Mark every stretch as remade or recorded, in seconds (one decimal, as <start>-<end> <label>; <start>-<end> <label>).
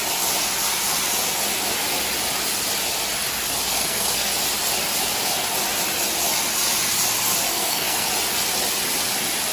0.0-3.7 recorded; 3.7-4.3 remade; 4.3-7.5 recorded; 7.5-8.1 remade; 8.1-9.5 recorded